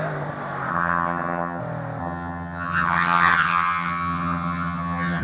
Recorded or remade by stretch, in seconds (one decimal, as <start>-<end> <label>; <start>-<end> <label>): 0.0-0.7 recorded; 0.7-1.6 remade; 1.6-2.0 recorded; 2.0-5.2 remade